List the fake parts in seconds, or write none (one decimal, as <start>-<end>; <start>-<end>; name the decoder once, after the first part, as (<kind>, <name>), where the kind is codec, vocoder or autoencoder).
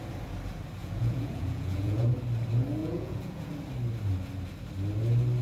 0.8-2.1 (vocoder, Vocos); 2.8-3.5